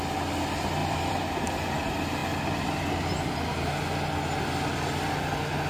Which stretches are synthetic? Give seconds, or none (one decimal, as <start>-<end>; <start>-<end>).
0.8-1.4